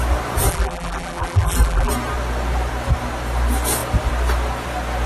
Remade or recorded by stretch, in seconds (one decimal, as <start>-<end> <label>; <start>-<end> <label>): 0.0-0.5 recorded; 0.5-1.9 remade; 1.9-5.1 recorded